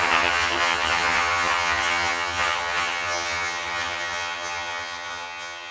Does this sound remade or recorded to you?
remade